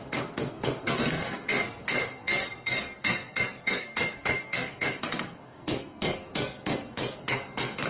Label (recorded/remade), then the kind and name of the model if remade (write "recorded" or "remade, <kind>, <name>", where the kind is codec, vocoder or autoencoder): remade, codec, SNAC